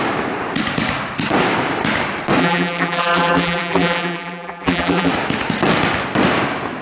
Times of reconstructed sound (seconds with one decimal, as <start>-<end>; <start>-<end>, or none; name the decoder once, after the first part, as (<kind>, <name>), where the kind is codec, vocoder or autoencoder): 2.4-5.1 (vocoder, BigVGAN v2)